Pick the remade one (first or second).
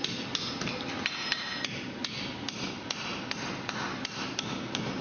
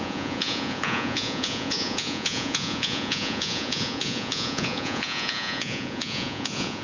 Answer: second